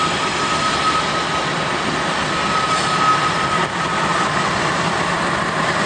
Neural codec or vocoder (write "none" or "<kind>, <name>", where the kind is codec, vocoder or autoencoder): none